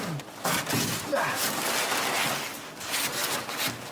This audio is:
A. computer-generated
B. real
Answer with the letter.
B